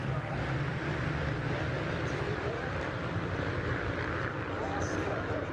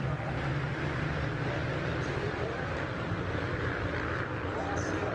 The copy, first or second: first